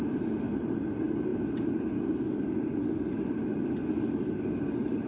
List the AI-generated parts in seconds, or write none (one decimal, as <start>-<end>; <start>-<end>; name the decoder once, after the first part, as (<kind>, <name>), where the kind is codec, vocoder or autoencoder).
none